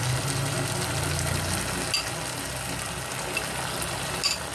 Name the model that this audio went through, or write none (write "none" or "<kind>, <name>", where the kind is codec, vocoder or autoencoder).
none